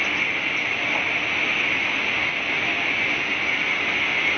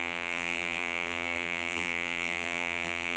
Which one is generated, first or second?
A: second